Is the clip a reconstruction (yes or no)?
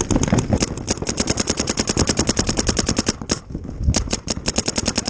no